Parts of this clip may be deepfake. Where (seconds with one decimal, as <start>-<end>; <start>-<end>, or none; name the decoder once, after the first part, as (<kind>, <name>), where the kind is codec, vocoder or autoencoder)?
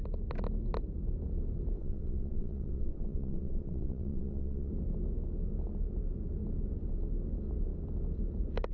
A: 1.8-4.7 (vocoder, WaveNeXt)